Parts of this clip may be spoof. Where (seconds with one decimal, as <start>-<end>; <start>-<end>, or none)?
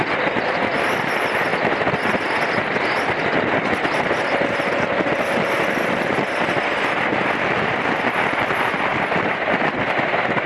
8.9-9.6